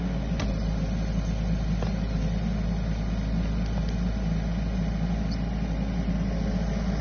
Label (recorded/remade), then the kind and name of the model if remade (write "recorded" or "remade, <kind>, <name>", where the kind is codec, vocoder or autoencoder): recorded